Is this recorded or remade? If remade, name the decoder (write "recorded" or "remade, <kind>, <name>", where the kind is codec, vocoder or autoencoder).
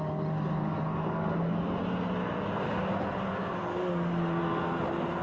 recorded